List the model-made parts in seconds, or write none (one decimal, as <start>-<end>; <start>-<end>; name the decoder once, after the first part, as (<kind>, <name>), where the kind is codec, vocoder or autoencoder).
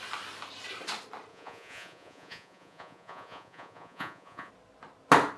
1.3-4.5 (vocoder, Vocos)